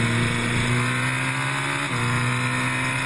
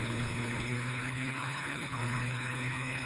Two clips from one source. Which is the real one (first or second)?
first